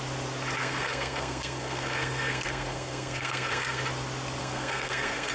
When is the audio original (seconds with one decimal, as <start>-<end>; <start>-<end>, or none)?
0.0-0.6; 3.8-4.4